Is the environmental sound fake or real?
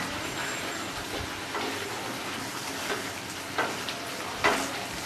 real